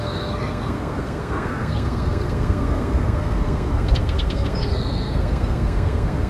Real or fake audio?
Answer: fake